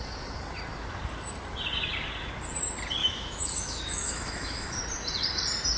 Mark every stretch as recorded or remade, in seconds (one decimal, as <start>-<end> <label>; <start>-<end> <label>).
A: 0.0-3.0 recorded; 3.0-4.8 remade; 4.8-5.8 recorded